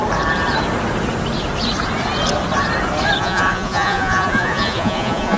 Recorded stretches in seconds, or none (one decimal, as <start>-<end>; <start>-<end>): 0.0-3.2

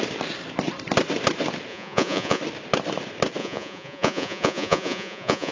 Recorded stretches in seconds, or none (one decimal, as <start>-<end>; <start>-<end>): 0.0-1.7; 2.4-3.4

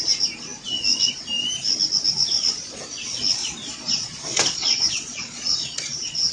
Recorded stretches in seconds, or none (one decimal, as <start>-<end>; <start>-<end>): 0.0-2.2; 2.8-3.4